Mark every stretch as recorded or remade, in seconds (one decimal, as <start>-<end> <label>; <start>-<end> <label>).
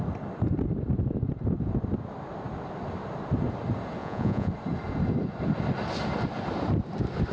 0.0-4.0 recorded; 4.0-4.5 remade; 4.5-7.3 recorded